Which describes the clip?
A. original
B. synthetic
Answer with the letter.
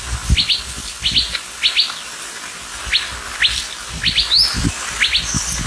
A